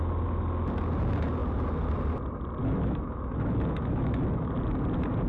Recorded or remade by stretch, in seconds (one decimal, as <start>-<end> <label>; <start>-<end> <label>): 0.0-2.6 recorded; 2.6-4.5 remade; 4.5-5.3 recorded